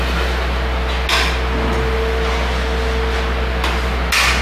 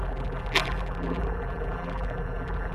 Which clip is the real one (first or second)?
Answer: first